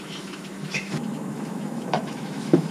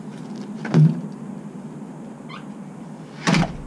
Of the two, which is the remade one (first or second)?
first